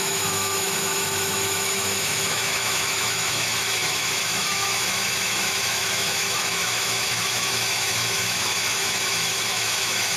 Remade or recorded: remade